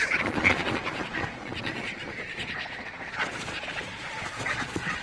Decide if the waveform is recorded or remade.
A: remade